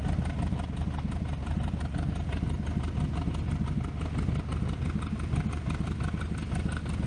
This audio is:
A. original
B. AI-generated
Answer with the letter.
A